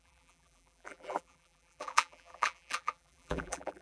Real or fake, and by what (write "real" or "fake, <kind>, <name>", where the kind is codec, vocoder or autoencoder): fake, vocoder, BigVGAN v2